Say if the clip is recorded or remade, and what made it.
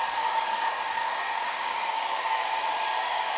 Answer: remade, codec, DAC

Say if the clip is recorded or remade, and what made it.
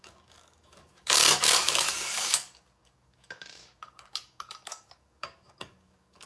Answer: remade, codec, DAC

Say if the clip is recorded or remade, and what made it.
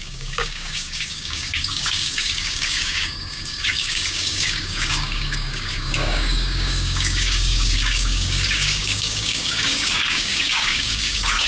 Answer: remade, codec, DAC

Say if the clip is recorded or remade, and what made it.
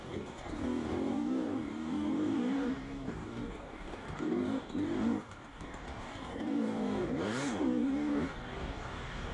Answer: remade, codec, DAC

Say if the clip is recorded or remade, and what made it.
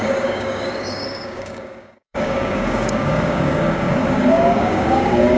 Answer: remade, codec, DAC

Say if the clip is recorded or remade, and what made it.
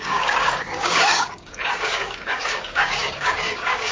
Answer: remade, codec, DAC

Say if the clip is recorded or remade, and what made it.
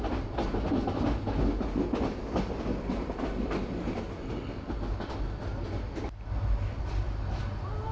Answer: recorded